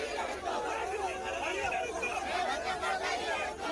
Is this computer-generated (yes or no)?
no